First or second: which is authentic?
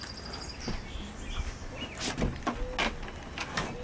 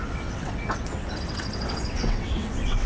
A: first